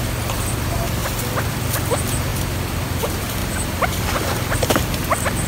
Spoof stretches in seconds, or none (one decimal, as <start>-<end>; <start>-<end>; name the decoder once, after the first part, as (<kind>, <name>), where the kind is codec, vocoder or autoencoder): 0.0-1.0 (vocoder, BigVGAN v2); 1.5-2.3; 3.0-3.4; 4.0-5.5